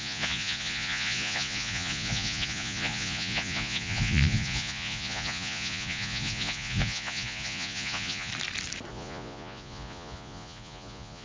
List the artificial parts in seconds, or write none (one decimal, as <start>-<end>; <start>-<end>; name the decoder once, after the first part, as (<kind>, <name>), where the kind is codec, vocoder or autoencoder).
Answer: 0.0-8.3 (vocoder, Vocos); 8.9-11.2